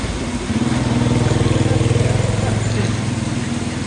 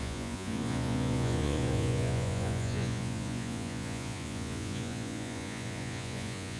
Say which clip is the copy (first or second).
second